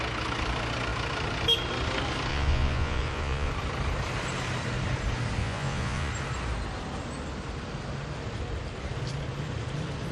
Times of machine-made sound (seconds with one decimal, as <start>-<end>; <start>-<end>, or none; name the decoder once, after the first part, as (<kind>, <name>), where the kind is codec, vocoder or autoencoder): 2.3-3.5 (vocoder, Vocos); 5.4-6.1